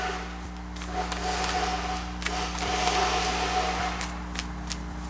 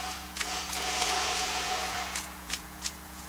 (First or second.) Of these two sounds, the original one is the first